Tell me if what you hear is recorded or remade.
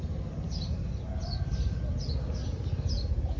recorded